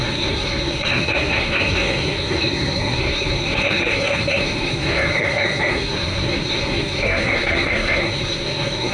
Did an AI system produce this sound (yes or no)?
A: yes